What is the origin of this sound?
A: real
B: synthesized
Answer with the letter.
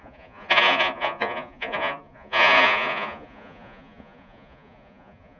B